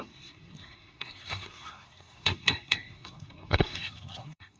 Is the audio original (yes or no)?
no